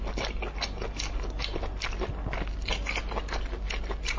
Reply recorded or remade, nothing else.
recorded